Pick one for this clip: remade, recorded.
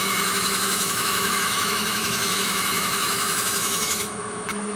remade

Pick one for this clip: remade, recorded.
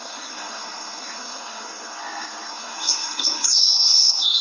remade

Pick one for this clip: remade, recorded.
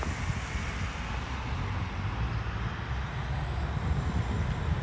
recorded